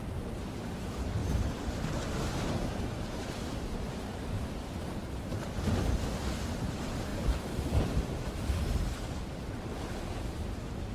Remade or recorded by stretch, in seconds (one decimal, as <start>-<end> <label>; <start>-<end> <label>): 0.0-7.1 recorded; 7.1-7.9 remade; 7.9-10.9 recorded